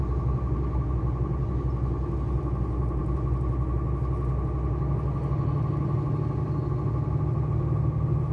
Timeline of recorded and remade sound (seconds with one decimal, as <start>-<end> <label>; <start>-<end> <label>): 0.0-8.3 recorded